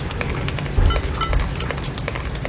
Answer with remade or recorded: recorded